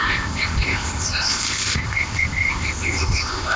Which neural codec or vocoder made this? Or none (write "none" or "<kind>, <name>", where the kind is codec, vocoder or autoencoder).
codec, ZipCodec